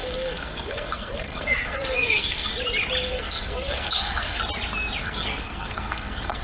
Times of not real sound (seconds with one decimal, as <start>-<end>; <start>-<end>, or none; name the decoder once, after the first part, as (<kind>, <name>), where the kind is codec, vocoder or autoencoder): 0.0-2.5 (codec, SNAC); 3.1-4.4; 5.0-6.4